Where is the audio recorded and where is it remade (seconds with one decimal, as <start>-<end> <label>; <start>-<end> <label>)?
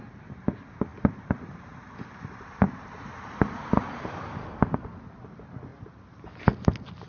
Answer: 0.0-0.9 recorded; 0.9-3.6 remade; 3.6-5.7 recorded; 5.7-6.4 remade; 6.4-7.1 recorded